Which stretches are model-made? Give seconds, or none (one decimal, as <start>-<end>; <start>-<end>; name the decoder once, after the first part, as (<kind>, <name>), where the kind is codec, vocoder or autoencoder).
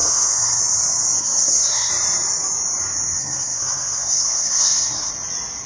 0.0-0.6 (codec, SNAC); 1.2-1.9; 3.2-5.1